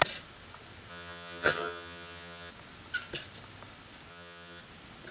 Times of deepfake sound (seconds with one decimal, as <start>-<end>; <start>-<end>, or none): 0.9-2.5; 4.1-4.6